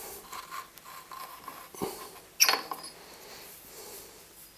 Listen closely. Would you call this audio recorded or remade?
recorded